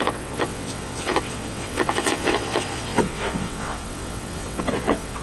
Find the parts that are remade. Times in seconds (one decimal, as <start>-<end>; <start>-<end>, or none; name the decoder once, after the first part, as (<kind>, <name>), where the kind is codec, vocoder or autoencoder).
0.0-5.2 (vocoder, WaveNeXt)

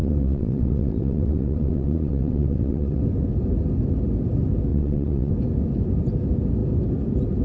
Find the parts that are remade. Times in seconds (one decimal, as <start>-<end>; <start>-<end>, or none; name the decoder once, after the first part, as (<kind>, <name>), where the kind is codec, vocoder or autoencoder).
0.0-3.0 (vocoder, WaveNeXt); 4.7-5.3

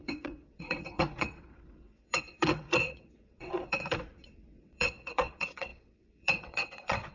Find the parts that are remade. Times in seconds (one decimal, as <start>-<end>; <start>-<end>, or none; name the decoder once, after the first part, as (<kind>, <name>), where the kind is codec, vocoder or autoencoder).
0.0-7.1 (vocoder, WaveNeXt)

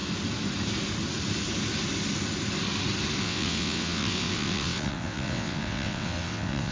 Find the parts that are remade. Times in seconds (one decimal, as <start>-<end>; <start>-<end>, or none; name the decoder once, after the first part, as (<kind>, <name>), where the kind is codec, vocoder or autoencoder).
3.2-6.7 (vocoder, WaveNeXt)